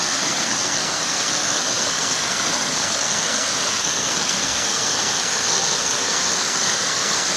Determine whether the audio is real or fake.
fake